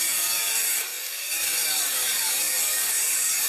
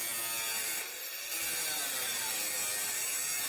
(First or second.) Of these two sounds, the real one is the second